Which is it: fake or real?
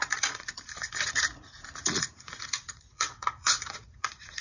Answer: fake